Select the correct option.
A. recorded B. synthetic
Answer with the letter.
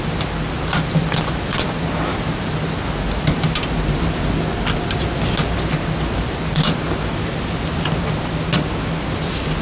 A